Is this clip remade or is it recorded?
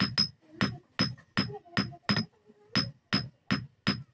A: recorded